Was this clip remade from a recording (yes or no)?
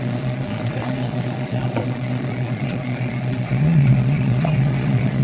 yes